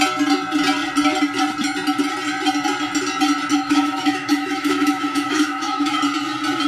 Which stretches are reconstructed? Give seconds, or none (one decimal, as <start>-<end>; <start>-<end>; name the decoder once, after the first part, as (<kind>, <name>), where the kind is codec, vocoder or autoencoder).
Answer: 3.5-6.0 (autoencoder, DAC-VAE)